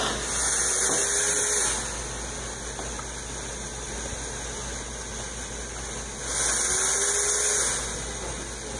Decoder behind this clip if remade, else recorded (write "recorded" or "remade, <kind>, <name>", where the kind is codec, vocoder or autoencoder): recorded